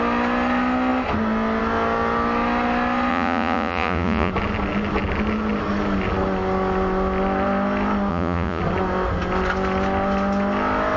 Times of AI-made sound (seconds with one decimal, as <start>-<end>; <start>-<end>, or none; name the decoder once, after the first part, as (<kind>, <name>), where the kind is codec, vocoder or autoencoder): 3.1-4.3 (vocoder, Vocos); 8.1-8.6